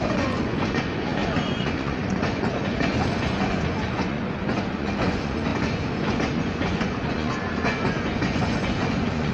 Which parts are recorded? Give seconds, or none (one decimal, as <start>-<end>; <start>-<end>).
none